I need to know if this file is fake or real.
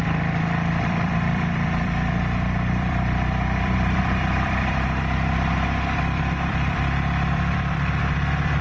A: fake